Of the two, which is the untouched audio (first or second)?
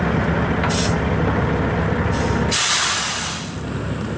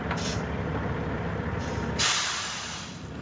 first